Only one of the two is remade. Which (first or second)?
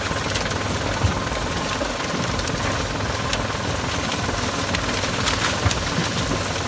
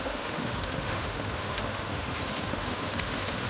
second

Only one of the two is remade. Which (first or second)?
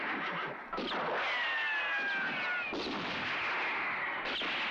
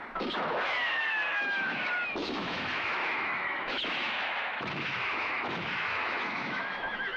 second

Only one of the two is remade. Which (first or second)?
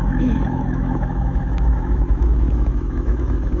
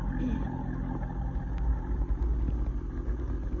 first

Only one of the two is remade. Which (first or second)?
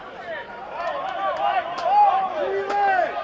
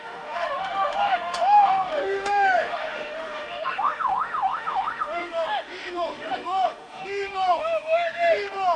second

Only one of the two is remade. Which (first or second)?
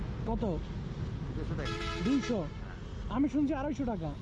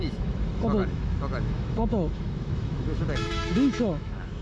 second